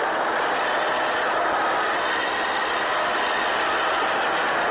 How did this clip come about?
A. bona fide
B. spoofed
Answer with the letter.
A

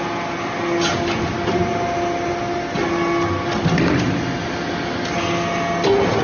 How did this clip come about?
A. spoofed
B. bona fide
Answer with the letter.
B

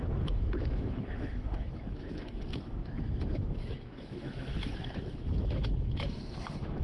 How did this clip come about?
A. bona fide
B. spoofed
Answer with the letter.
B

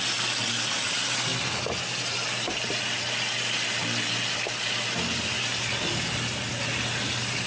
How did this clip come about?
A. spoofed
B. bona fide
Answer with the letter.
B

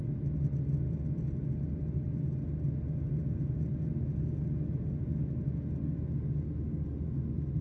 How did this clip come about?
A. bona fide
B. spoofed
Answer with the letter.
A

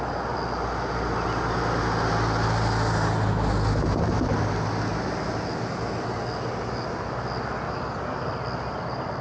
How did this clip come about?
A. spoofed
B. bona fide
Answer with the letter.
B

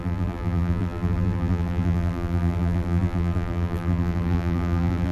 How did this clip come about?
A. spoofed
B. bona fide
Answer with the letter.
A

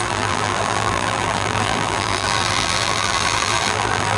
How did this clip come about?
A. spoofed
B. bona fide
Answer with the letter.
A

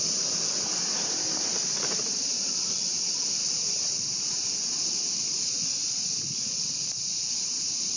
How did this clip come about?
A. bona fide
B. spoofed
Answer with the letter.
B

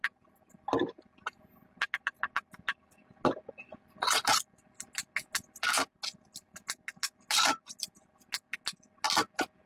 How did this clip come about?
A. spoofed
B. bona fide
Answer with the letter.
B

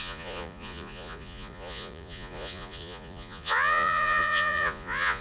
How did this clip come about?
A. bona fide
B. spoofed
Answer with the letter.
B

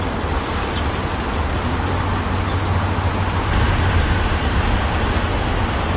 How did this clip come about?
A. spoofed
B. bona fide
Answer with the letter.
B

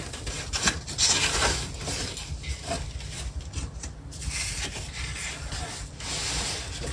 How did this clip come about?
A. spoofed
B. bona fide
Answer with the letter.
B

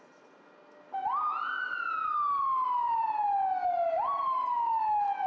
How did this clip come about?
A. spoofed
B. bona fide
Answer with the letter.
B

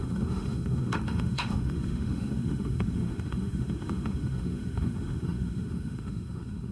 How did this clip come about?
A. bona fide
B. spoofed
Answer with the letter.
B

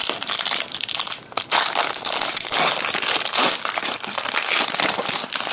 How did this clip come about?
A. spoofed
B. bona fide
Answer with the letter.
B